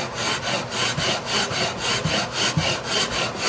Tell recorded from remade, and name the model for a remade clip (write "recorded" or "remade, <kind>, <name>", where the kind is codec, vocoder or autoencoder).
recorded